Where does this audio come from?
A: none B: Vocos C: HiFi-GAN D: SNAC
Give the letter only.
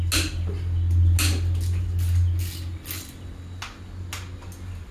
A